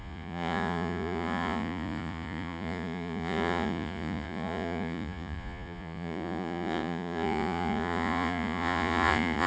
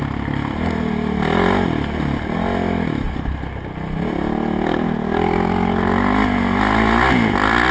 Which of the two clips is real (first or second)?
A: second